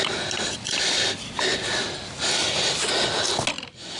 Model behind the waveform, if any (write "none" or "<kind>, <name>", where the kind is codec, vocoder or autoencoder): none